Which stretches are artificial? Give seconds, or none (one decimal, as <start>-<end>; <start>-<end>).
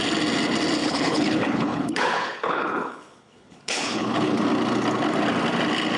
0.8-4.4